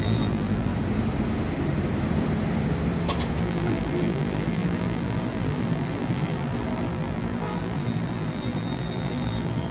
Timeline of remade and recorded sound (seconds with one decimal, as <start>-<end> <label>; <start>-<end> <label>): 0.0-0.7 remade; 0.7-3.4 recorded; 3.4-9.7 remade